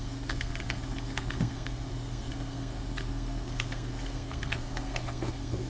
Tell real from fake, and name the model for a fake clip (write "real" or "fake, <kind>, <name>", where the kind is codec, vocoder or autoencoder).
fake, codec, SNAC